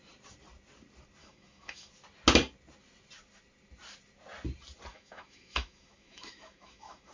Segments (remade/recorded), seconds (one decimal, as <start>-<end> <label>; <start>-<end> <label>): 0.0-1.2 recorded; 1.2-1.9 remade; 1.9-4.9 recorded; 4.9-7.1 remade